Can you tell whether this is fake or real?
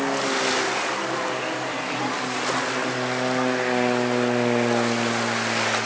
real